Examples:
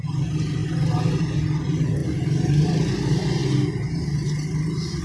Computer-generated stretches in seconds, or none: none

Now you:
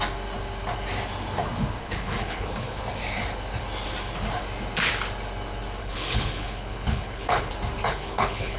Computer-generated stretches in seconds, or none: 1.8-2.8 (codec, HILCodec); 5.8-7.5; 7.9-8.6

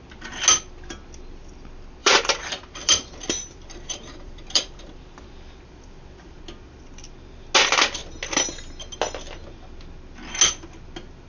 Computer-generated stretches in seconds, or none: 2.0-6.4 (vocoder, BigVGAN v2)